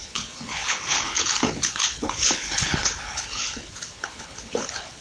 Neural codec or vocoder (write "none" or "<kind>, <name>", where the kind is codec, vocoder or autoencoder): codec, HILCodec